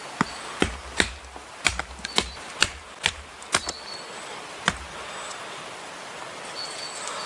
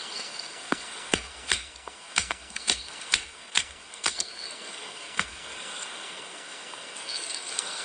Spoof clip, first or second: second